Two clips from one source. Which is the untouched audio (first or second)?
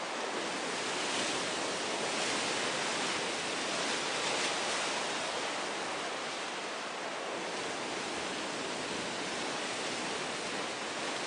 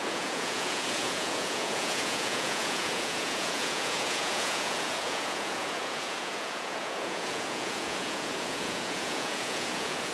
first